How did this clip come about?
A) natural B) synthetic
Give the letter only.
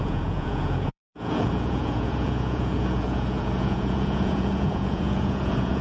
B